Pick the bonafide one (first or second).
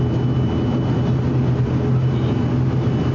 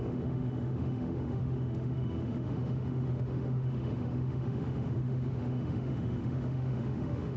first